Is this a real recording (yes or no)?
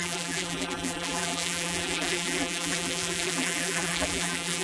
no